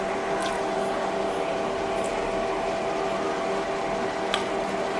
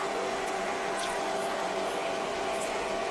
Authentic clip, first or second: first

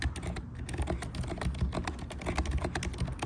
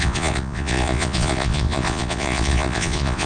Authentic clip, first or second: first